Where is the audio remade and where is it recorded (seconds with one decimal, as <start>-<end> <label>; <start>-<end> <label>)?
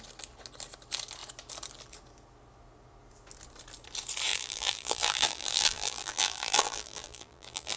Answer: 0.0-4.3 recorded; 4.3-7.8 remade